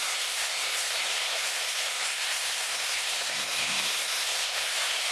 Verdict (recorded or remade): remade